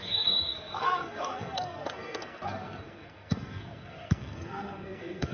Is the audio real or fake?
fake